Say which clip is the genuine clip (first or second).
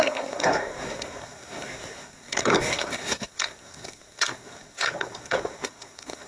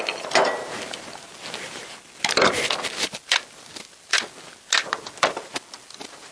second